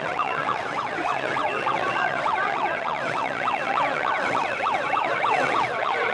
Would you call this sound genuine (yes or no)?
no